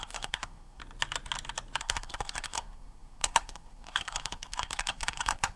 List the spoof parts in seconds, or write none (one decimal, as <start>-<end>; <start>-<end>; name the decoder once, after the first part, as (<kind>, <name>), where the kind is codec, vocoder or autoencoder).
0.0-0.8 (codec, SNAC); 1.8-5.6